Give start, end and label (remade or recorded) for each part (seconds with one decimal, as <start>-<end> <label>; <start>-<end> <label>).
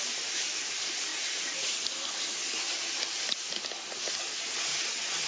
0.0-4.7 recorded; 4.7-5.3 remade